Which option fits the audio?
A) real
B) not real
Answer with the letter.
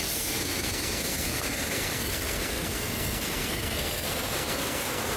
B